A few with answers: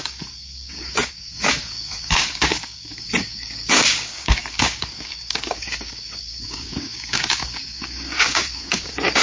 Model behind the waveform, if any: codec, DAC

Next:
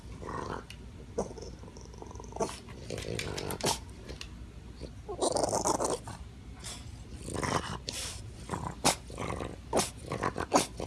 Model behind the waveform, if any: vocoder, BigVGAN v2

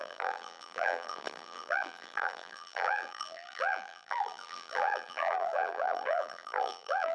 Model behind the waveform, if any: vocoder, BigVGAN v2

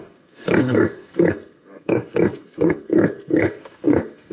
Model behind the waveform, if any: codec, SNAC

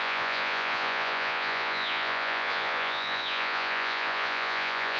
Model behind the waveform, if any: vocoder, Vocos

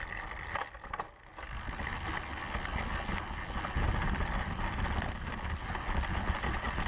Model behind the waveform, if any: none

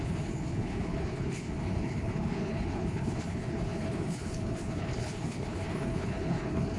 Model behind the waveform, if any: codec, HILCodec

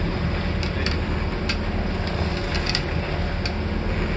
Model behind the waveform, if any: none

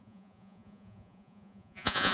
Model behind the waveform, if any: vocoder, Vocos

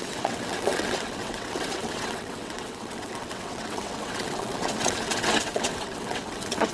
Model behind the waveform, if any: vocoder, WaveNeXt